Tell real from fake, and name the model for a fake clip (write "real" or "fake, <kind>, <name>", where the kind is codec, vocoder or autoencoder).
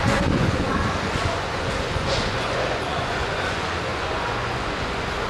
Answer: fake, vocoder, Vocos